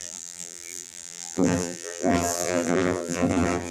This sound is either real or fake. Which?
fake